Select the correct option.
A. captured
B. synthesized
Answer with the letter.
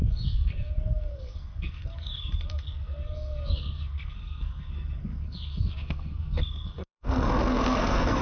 B